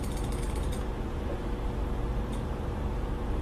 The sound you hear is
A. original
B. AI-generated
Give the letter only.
B